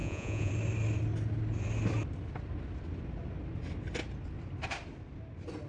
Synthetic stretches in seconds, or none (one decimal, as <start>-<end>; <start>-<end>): 0.0-0.5